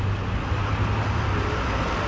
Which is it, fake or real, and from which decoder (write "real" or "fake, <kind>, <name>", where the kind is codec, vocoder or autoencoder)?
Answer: fake, vocoder, BigVGAN v2